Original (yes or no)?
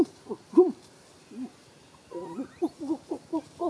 yes